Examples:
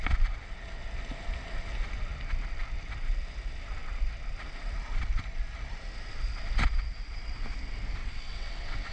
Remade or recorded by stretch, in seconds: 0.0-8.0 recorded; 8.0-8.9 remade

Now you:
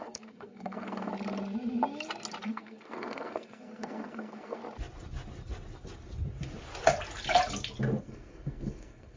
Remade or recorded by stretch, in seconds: 0.0-1.1 remade; 1.1-2.4 recorded; 2.4-4.6 remade; 4.6-8.0 recorded; 8.0-9.2 remade

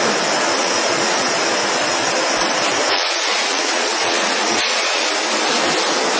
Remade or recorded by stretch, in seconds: 0.0-0.6 recorded; 0.6-1.3 remade; 1.3-2.8 recorded; 2.8-5.0 remade; 5.0-6.2 recorded

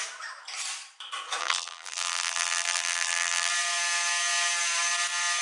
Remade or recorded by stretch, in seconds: 0.0-1.4 recorded; 1.4-3.5 remade; 3.5-5.4 recorded

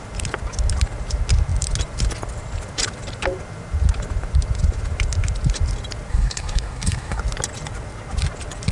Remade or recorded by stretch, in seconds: 0.0-6.1 recorded; 6.1-7.2 remade; 7.2-8.7 recorded

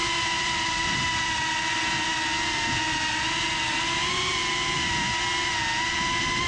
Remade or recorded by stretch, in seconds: 0.0-1.0 remade; 1.0-4.4 recorded; 4.4-5.1 remade; 5.1-6.5 recorded

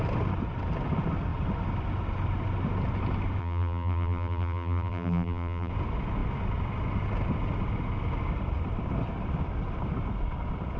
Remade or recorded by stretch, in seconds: 0.0-3.4 recorded; 3.4-5.7 remade; 5.7-10.8 recorded

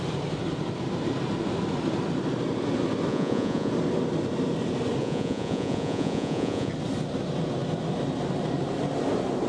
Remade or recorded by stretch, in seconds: 0.0-3.1 recorded; 3.1-3.7 remade; 3.7-5.0 recorded; 5.0-6.7 remade; 6.7-9.5 recorded